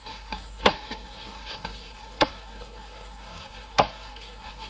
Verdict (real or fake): fake